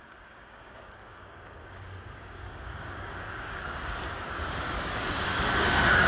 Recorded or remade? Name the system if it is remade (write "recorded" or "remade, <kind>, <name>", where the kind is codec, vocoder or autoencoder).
remade, codec, DAC